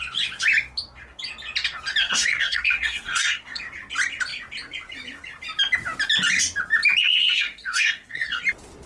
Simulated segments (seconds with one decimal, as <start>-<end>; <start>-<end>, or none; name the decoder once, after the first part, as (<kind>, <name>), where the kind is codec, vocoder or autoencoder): 2.0-3.6 (codec, SNAC); 7.0-8.4